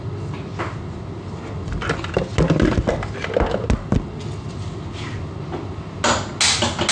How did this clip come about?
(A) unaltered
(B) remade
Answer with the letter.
A